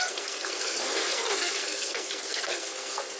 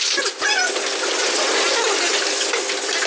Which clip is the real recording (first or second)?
second